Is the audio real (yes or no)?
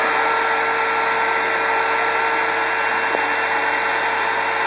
yes